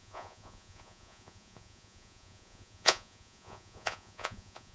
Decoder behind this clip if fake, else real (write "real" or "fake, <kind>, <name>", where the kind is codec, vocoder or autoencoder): fake, vocoder, Vocos